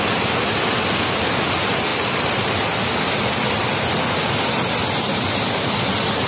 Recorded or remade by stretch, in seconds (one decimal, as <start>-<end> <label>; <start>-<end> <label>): 0.0-6.3 recorded